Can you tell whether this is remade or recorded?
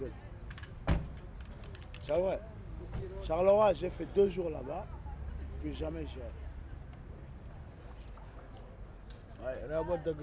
recorded